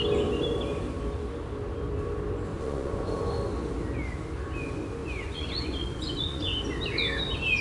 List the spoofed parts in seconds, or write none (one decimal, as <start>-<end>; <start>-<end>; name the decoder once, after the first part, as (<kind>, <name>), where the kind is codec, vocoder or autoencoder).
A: 2.5-3.2 (vocoder, Vocos); 5.0-6.6